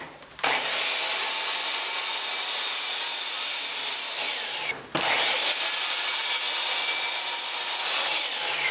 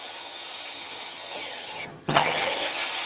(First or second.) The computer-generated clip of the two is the second